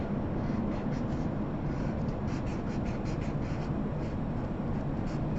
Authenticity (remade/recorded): recorded